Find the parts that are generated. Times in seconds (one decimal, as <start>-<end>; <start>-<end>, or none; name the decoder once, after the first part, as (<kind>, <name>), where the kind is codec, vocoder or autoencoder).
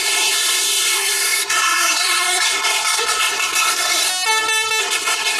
0.0-4.1 (codec, SNAC); 4.8-5.4